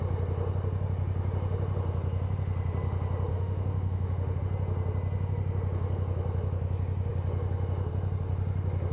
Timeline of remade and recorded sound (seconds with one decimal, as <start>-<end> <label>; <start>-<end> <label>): 0.0-3.3 recorded; 3.3-4.4 remade; 4.4-8.9 recorded